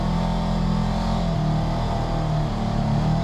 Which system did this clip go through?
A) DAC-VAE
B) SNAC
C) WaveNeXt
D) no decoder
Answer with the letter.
D